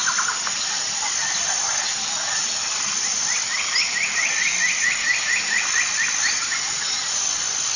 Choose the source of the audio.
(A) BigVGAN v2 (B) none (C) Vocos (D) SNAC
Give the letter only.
A